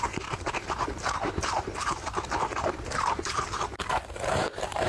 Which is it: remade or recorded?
remade